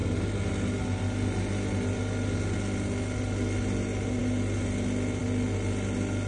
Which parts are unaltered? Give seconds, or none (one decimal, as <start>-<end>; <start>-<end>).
0.0-6.3